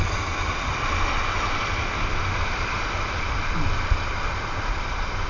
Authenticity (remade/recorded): recorded